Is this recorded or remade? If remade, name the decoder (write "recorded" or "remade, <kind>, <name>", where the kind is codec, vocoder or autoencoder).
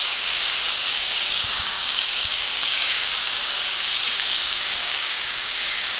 remade, codec, DAC